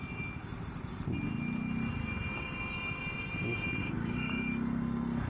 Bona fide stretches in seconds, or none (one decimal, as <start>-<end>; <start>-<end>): 0.0-3.8